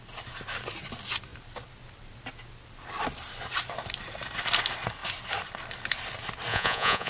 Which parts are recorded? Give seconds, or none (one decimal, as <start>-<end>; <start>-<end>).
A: 0.0-6.5